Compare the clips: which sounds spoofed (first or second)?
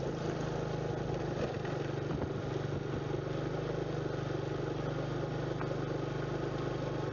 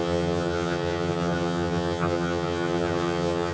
second